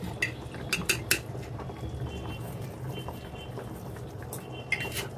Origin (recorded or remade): recorded